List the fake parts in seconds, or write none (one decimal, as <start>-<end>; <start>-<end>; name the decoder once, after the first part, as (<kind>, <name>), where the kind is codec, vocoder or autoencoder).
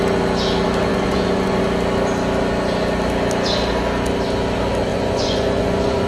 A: 0.9-1.6 (vocoder, Vocos); 4.9-6.1